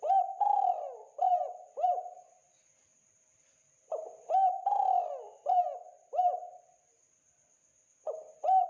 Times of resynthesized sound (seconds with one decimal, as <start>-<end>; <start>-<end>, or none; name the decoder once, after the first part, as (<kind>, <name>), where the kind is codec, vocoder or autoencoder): 2.9-4.6 (vocoder, BigVGAN v2)